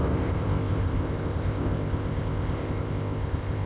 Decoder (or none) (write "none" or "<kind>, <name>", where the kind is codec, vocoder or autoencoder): codec, ZipCodec